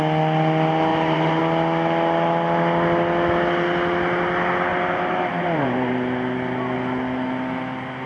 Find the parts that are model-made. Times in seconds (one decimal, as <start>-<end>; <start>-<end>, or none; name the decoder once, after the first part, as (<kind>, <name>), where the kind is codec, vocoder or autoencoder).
0.9-1.4 (vocoder, BigVGAN v2); 4.7-5.9